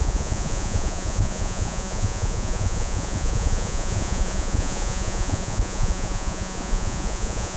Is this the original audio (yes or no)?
no